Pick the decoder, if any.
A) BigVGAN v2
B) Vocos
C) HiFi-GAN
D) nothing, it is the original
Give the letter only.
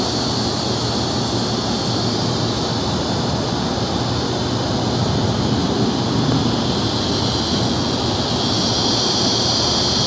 D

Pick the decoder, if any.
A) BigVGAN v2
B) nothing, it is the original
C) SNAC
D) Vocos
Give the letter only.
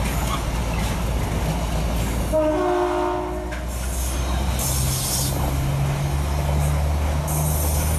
B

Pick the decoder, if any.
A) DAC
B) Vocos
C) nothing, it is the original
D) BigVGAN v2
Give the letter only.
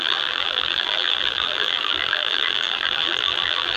D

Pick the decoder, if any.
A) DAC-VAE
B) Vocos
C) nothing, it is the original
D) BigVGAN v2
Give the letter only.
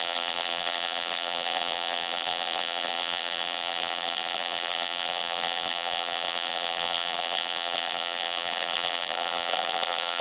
D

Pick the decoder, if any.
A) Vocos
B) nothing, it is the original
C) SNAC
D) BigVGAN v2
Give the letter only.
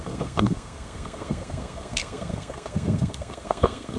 C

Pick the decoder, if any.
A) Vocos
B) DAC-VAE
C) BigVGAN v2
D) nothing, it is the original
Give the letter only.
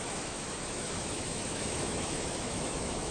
B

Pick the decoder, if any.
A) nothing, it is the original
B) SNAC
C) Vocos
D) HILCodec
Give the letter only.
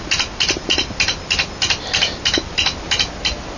A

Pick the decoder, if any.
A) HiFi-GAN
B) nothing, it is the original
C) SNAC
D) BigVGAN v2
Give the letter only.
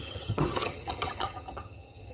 A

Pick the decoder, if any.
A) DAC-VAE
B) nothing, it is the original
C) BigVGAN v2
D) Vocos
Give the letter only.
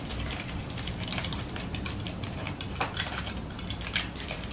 C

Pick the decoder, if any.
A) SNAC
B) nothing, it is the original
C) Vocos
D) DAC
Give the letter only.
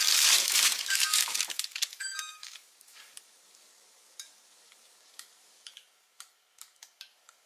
D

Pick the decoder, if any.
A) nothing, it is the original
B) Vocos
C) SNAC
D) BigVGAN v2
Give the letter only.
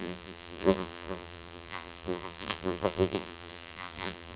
D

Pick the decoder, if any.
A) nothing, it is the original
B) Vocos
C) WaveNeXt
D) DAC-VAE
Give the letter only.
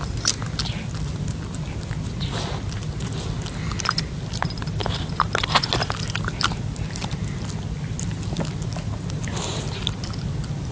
A